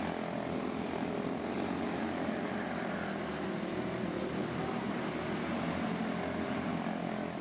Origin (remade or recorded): recorded